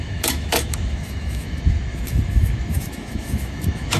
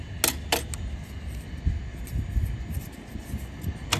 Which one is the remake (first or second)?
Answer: first